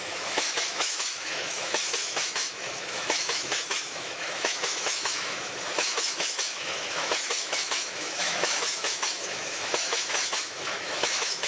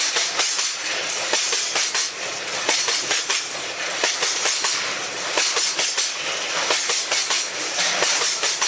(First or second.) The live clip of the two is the second